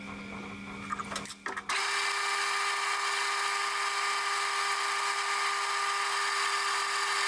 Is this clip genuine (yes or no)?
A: yes